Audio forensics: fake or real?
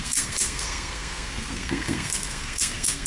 fake